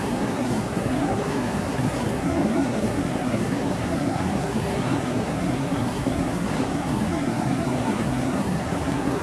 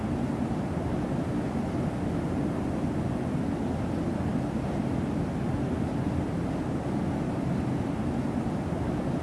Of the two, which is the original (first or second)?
second